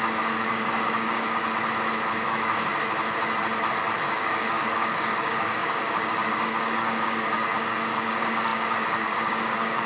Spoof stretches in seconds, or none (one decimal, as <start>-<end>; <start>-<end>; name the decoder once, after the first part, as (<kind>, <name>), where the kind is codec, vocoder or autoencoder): 0.0-1.4 (codec, DAC); 2.1-2.7; 4.1-9.9

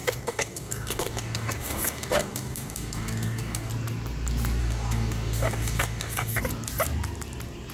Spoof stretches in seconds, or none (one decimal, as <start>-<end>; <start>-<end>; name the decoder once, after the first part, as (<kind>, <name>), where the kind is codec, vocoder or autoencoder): 0.0-3.7 (codec, DAC); 4.6-6.4

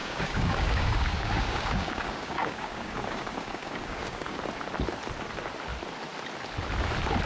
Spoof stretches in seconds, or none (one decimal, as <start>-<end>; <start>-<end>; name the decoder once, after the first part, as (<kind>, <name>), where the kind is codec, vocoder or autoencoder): 0.0-4.4 (codec, DAC)

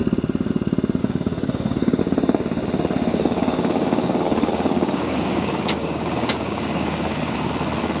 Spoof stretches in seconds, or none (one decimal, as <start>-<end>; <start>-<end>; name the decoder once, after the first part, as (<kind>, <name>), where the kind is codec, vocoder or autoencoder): 1.0-2.0 (codec, DAC); 3.1-7.5

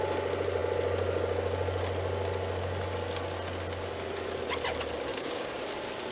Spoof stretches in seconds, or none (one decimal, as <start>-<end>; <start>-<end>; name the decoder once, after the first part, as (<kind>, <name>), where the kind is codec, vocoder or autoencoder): 5.1-5.6 (codec, DAC)

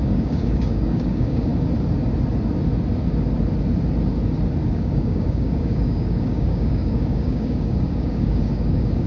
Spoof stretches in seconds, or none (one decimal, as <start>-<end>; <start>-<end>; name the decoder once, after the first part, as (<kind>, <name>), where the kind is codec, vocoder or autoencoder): 0.0-1.5 (codec, DAC); 4.7-9.1

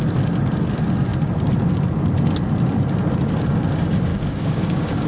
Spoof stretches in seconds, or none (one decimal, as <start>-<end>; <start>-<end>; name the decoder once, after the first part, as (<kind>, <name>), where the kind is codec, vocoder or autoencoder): 4.1-5.1 (codec, DAC)

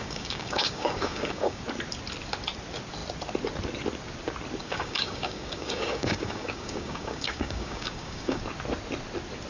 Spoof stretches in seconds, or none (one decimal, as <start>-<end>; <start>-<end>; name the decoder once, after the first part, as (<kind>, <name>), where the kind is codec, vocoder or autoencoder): 0.0-1.6 (codec, DAC); 4.6-8.4